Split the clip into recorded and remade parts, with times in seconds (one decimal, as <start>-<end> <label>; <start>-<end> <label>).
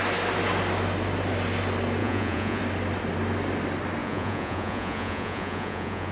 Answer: 0.0-2.0 recorded; 2.0-2.6 remade; 2.6-4.0 recorded; 4.0-6.1 remade